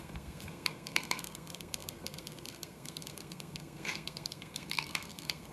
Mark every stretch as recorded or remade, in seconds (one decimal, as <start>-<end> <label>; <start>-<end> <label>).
0.0-5.5 remade